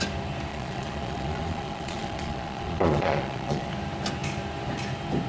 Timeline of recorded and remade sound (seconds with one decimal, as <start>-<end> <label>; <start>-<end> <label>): 0.0-0.5 recorded; 0.5-3.7 remade; 3.7-5.3 recorded